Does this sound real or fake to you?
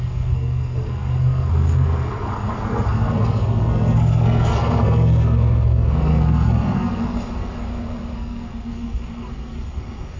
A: fake